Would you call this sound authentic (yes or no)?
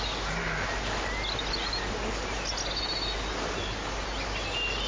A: yes